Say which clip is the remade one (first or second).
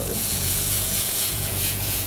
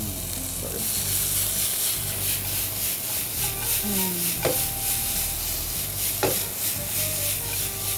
first